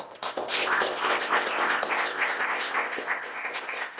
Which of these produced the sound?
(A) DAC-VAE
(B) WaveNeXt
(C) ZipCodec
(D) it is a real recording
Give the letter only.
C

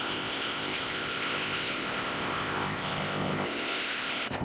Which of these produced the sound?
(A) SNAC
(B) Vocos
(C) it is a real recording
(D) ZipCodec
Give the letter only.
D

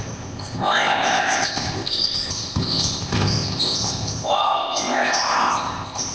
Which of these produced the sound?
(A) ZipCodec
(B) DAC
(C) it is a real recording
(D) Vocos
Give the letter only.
A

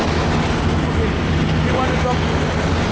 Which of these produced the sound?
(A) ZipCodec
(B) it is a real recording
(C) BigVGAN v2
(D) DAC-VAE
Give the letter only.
B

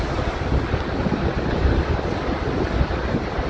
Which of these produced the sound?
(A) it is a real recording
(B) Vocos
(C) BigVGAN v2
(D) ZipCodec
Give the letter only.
A